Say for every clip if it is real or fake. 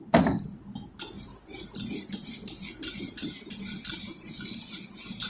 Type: real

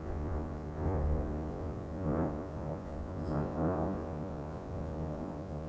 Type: fake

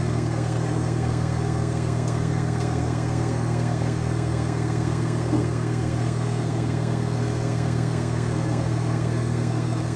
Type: fake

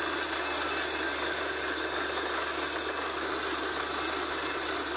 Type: real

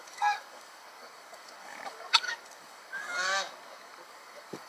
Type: fake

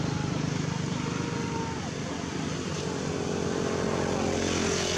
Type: real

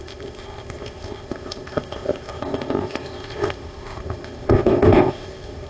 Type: fake